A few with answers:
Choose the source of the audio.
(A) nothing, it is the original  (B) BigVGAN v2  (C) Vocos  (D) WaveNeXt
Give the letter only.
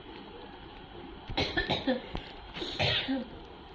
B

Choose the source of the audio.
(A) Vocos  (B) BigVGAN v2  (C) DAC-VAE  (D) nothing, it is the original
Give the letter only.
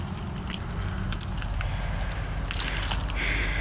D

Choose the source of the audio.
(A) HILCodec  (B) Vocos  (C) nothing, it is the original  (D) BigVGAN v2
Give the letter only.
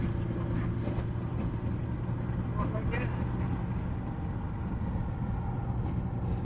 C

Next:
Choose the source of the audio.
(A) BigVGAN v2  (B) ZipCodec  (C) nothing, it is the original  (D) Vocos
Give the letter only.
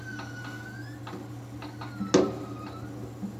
C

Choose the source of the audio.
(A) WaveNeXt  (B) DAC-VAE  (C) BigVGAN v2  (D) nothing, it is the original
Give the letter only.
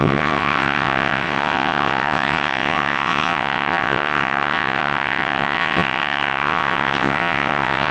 A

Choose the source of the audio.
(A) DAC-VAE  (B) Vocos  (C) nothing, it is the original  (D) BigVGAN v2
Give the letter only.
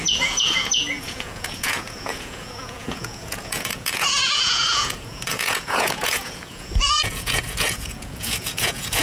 B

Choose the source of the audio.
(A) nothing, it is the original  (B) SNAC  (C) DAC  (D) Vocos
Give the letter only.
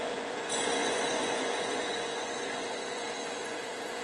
D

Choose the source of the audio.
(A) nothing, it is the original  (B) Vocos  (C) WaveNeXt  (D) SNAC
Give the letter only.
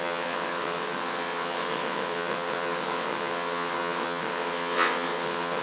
C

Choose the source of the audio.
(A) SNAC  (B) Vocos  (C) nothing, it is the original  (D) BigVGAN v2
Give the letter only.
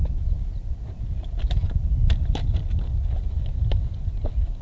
C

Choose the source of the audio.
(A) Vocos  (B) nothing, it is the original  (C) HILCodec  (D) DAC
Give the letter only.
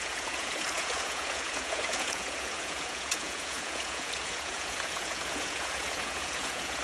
A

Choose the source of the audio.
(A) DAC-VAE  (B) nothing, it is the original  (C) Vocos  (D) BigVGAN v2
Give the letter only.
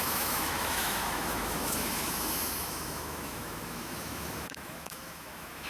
A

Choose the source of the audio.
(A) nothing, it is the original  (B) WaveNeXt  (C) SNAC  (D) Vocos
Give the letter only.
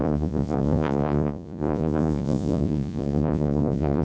D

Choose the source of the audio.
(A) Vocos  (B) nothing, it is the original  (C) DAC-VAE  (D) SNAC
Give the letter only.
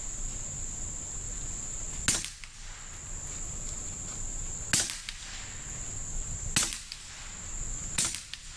B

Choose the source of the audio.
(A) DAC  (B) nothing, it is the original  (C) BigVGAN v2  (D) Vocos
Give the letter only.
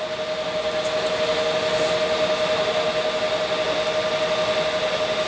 B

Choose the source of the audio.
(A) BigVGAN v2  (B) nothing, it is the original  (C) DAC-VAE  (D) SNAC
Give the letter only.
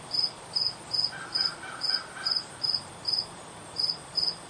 A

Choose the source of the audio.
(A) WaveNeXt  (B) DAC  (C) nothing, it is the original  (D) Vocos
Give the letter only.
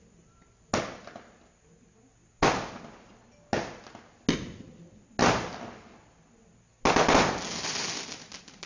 C